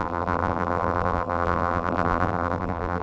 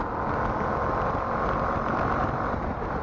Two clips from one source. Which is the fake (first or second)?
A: first